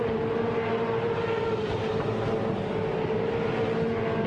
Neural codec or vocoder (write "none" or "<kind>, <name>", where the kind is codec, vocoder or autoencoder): none